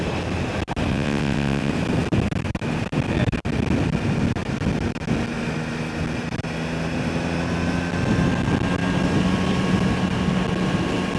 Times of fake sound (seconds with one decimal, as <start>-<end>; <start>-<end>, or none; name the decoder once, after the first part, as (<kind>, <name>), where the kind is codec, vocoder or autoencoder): 0.9-1.7 (vocoder, WaveNeXt)